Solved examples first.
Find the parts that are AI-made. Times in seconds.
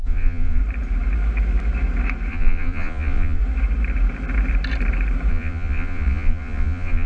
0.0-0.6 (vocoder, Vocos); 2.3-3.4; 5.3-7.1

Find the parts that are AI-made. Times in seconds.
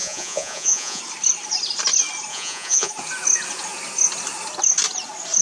0.0-1.0 (vocoder, Vocos); 2.3-2.9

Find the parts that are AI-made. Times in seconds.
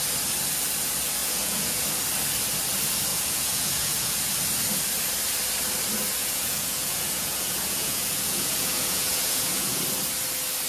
1.2-1.8 (vocoder, Vocos); 3.1-4.2; 6.2-9.8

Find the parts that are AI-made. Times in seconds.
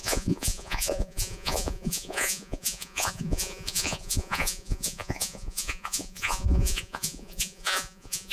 0.0-8.3 (vocoder, Vocos)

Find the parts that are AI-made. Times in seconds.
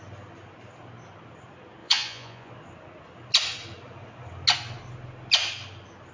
1.8-2.5 (vocoder, Vocos)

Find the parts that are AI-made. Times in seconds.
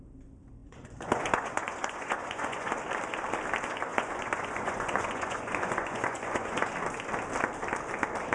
0.6-2.7 (vocoder, Vocos); 3.9-6.7